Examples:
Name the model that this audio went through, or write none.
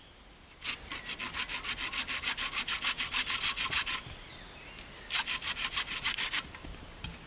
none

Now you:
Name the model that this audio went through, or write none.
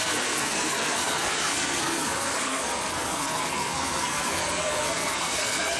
codec, SNAC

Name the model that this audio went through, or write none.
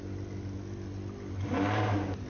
none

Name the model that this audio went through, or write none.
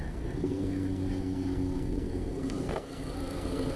codec, SNAC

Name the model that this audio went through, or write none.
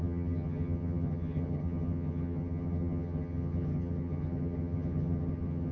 vocoder, HiFi-GAN